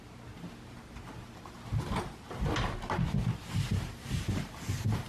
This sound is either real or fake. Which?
real